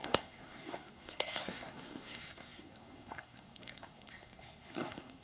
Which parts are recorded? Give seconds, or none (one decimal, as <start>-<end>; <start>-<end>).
none